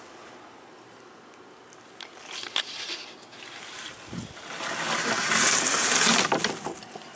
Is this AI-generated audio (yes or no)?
no